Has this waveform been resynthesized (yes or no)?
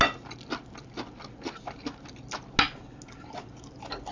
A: no